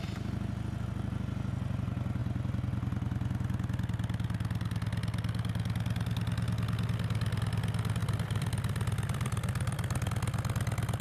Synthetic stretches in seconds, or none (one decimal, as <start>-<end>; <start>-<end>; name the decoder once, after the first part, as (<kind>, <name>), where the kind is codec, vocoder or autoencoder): 8.0-10.1 (vocoder, BigVGAN v2)